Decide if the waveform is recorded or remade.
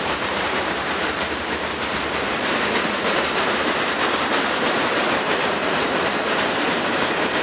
remade